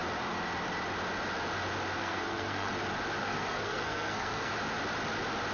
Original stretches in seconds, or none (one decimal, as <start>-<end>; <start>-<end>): 0.0-2.0; 2.7-3.2; 4.5-5.5